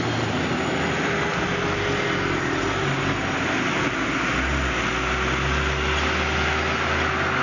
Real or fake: real